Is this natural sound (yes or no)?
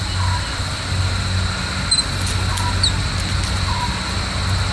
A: yes